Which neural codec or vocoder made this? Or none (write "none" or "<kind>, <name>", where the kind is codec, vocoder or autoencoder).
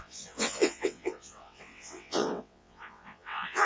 vocoder, WaveNeXt